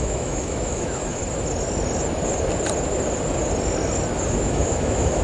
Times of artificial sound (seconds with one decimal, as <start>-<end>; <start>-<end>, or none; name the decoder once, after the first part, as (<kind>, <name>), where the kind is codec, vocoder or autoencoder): 0.0-1.2 (autoencoder, DAC-VAE); 4.3-5.2